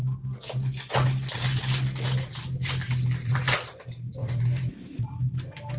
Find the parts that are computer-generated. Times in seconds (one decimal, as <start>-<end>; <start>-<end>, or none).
3.2-3.8; 4.2-5.1